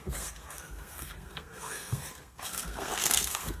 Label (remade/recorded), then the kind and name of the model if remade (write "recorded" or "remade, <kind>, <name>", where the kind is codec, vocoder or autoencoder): remade, codec, SNAC